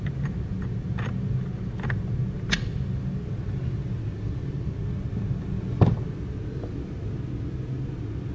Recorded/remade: recorded